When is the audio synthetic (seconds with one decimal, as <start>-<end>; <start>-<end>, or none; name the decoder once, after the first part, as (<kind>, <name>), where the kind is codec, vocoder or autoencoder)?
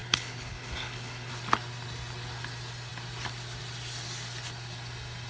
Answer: 0.0-1.3 (codec, HILCodec)